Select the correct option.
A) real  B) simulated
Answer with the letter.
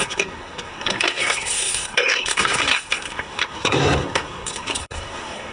B